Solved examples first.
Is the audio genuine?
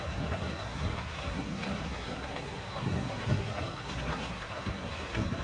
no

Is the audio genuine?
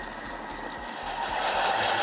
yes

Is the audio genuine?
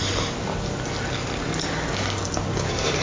yes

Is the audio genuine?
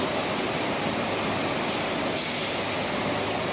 yes